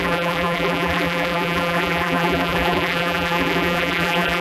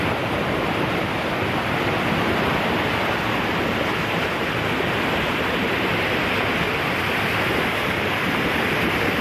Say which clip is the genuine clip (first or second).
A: second